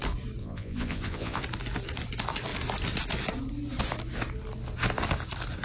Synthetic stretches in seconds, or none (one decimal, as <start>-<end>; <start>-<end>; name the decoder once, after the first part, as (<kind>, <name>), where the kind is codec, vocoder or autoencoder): 0.4-1.4 (vocoder, Vocos)